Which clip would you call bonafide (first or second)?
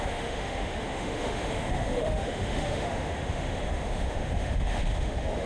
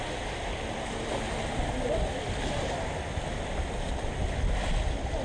second